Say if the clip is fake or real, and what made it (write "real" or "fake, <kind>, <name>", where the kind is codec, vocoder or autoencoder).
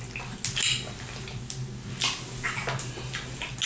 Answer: real